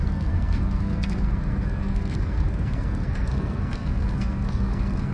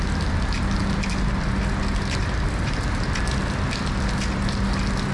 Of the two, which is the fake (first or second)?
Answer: first